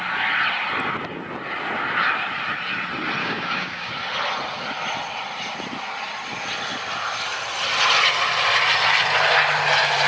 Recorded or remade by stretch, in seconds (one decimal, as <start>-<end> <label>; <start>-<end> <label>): 0.0-3.2 recorded; 3.2-3.9 remade; 3.9-10.1 recorded